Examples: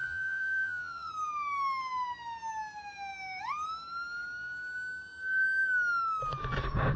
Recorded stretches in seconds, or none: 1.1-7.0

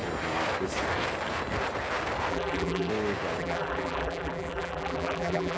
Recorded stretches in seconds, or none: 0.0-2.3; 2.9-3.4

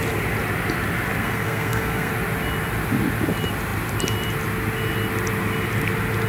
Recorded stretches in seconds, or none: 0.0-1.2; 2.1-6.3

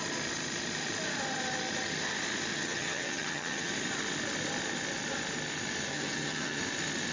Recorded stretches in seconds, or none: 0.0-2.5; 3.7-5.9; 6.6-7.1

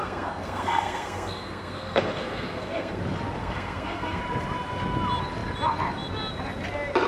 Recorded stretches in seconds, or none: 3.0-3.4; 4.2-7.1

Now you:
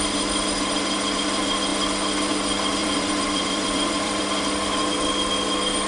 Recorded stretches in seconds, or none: 0.0-2.8; 4.2-5.9

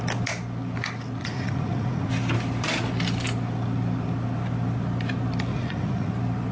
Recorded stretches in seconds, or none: 0.0-1.2; 2.1-5.5; 6.1-6.5

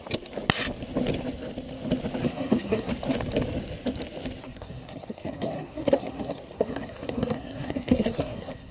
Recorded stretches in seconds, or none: 0.0-2.2; 2.9-4.4